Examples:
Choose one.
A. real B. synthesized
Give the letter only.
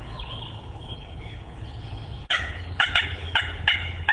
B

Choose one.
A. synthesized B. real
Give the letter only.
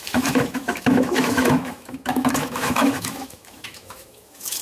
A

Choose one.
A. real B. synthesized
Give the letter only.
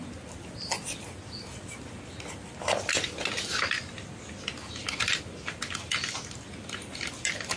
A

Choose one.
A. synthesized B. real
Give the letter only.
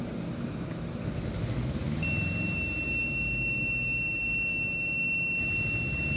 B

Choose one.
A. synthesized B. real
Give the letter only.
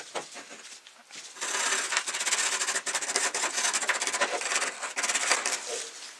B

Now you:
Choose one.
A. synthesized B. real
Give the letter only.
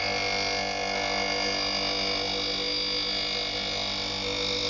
B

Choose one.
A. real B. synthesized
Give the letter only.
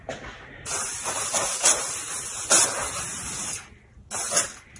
A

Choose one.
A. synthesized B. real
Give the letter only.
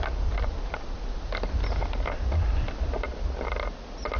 B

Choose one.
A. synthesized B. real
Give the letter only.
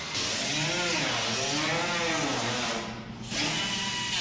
B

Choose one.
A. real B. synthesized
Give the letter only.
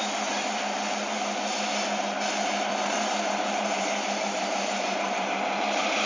B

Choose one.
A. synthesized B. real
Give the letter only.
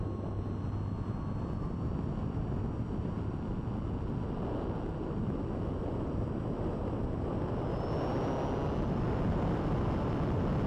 B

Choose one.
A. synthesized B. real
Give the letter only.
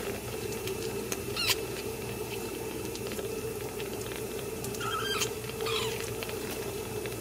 A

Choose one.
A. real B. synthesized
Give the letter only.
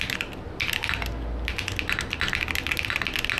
A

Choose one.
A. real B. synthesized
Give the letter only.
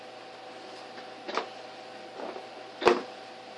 A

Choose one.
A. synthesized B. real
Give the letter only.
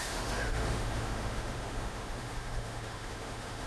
A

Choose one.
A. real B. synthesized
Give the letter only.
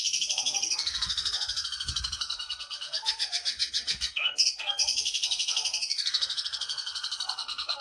B